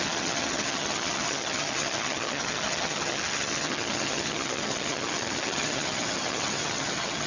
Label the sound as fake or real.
fake